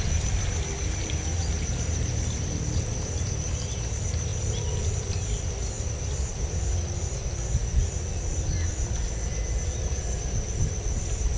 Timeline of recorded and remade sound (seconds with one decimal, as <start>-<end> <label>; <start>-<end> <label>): 0.0-4.3 remade; 4.3-5.0 recorded; 5.0-7.6 remade; 7.6-10.5 recorded; 10.5-11.4 remade